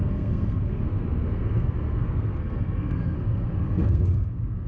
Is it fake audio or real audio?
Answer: fake